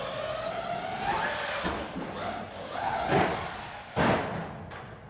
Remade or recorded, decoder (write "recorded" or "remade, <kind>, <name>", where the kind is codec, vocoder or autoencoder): recorded